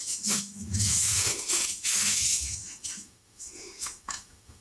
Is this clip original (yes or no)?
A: no